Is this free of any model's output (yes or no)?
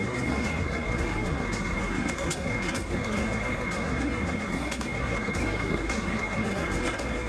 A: no